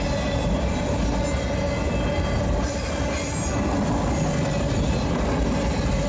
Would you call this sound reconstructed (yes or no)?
no